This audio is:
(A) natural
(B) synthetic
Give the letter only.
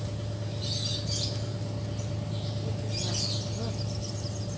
A